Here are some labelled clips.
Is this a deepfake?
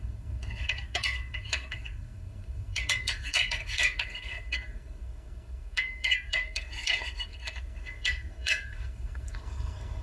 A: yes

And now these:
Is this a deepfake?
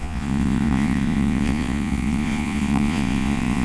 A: yes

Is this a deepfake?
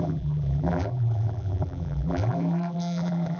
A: yes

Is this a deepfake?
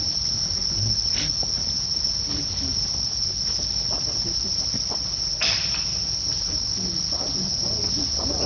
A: no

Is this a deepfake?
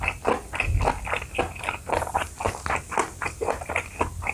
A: no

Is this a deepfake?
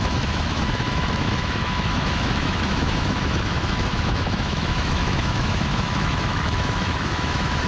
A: yes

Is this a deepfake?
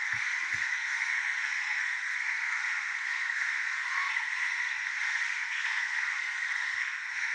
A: yes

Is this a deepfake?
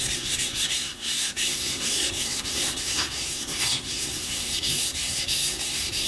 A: yes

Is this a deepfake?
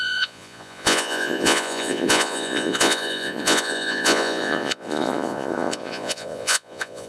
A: yes